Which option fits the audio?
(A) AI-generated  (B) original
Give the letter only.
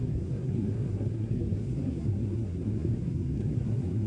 A